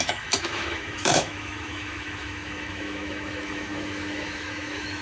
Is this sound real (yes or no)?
no